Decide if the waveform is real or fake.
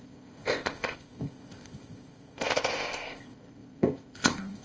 fake